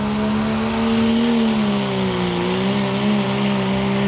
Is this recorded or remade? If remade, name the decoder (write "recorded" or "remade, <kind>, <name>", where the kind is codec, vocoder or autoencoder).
recorded